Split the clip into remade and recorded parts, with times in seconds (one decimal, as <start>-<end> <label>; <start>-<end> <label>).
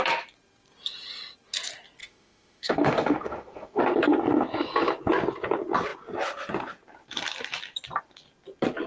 0.0-2.0 recorded; 2.0-3.8 remade; 3.8-8.9 recorded